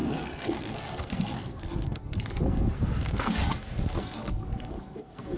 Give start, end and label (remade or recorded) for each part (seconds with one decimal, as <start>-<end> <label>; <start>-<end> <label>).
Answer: 0.0-5.4 remade